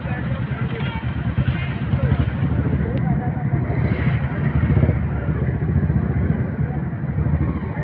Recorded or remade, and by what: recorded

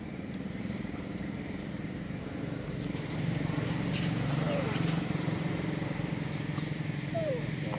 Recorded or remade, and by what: remade, vocoder, BigVGAN v2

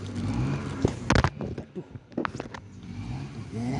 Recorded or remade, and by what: recorded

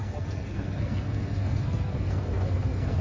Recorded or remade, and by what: remade, codec, SNAC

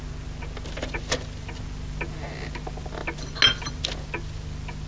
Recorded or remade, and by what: recorded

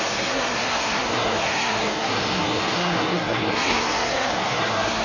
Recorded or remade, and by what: remade, codec, SNAC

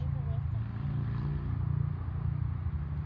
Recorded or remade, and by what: recorded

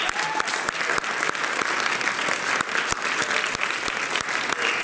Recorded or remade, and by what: recorded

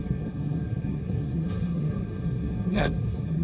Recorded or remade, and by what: remade, codec, SNAC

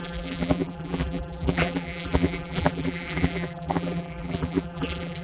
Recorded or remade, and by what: remade, vocoder, BigVGAN v2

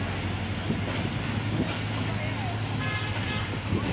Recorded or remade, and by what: recorded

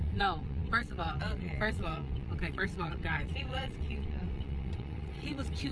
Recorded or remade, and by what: remade, vocoder, WaveNeXt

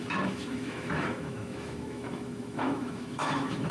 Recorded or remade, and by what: remade, autoencoder, DAC-VAE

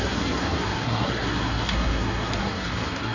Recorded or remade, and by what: remade, codec, SNAC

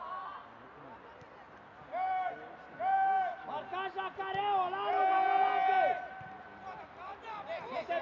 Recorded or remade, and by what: recorded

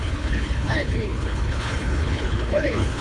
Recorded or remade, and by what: remade, codec, HILCodec